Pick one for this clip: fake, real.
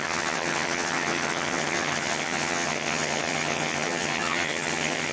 fake